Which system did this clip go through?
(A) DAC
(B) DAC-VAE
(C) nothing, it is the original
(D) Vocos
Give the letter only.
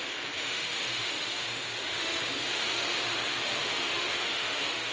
B